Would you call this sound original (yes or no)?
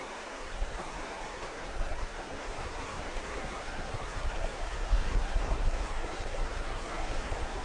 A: no